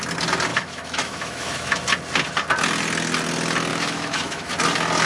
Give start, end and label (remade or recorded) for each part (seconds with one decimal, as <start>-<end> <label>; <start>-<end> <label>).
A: 0.0-0.5 recorded; 0.5-1.8 remade; 1.8-3.7 recorded; 3.7-4.5 remade; 4.5-5.1 recorded